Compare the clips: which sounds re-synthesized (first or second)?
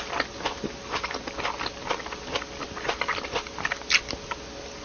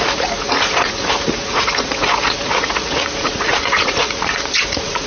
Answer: second